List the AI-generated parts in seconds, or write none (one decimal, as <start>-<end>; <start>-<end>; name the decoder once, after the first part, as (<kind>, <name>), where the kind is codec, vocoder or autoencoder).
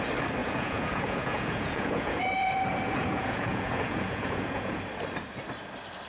0.4-2.2 (vocoder, Vocos); 3.0-4.8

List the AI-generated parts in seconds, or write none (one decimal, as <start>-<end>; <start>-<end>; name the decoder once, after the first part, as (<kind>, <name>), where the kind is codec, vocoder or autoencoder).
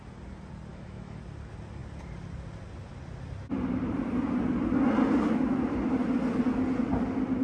0.7-1.2 (autoencoder, DAC-VAE)